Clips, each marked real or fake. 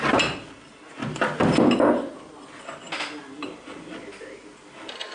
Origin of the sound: real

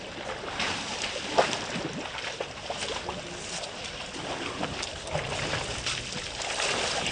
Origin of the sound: real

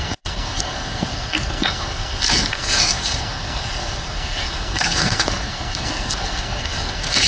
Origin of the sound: fake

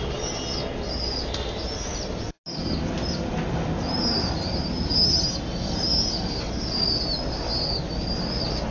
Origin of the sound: real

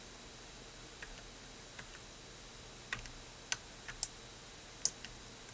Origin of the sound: real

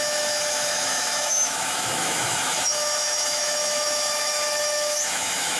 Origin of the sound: fake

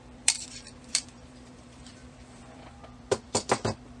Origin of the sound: fake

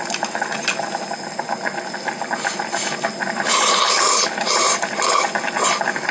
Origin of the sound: real